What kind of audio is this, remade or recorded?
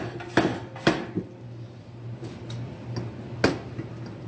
recorded